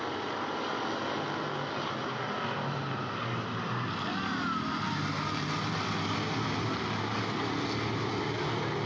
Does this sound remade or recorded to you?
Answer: recorded